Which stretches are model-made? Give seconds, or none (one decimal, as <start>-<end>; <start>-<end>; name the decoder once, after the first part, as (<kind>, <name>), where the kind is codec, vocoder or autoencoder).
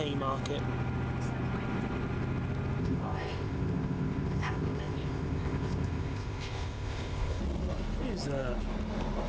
2.8-7.4 (codec, ZipCodec)